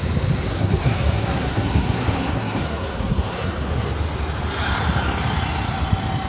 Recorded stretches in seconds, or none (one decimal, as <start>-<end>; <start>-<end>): 0.0-0.5; 3.9-6.3